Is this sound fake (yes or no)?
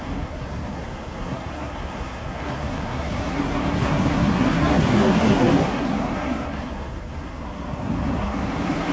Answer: yes